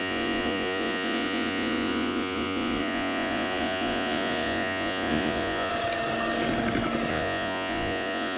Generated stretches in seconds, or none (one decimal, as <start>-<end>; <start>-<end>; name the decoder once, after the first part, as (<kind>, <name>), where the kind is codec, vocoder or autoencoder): 0.0-5.7 (vocoder, Vocos); 7.1-8.4